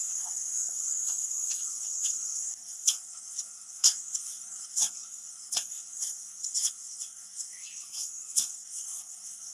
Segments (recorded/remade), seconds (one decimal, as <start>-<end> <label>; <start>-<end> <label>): 0.0-9.5 remade